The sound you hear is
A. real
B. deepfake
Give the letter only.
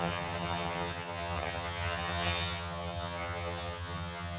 B